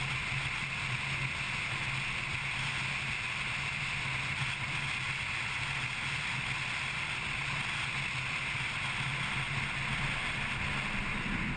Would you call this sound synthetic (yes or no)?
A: no